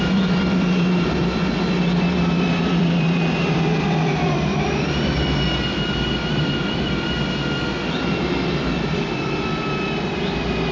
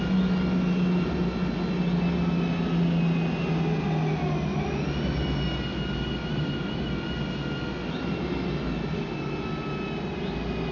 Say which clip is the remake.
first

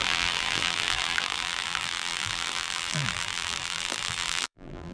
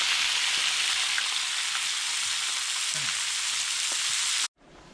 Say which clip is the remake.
first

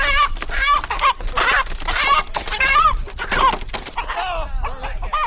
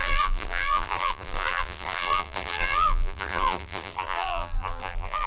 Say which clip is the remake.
second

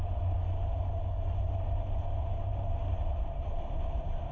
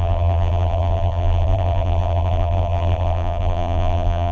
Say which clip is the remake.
second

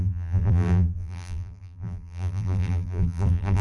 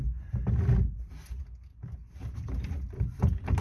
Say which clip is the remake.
first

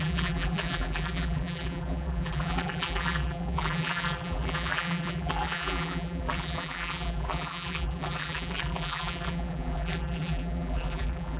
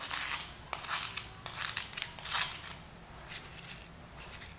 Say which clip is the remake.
first